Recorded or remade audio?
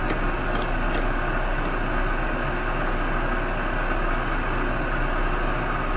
recorded